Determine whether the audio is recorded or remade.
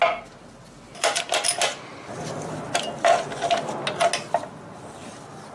recorded